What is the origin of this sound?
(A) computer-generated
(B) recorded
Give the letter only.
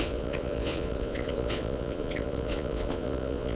A